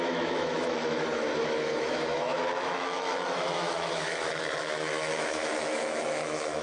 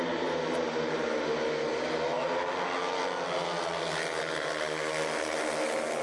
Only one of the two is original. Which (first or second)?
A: second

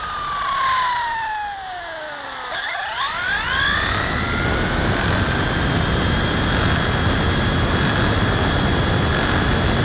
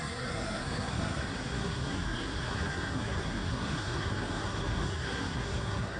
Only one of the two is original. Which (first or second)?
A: first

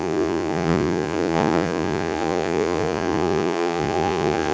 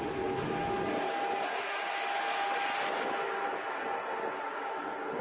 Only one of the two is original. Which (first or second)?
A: second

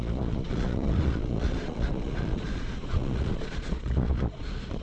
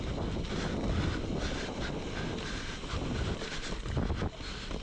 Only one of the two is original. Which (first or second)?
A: second